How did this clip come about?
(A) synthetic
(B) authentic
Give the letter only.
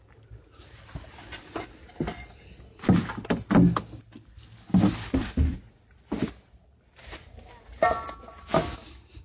B